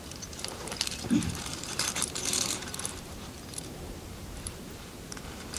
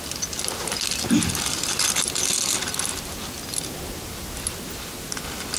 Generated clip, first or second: first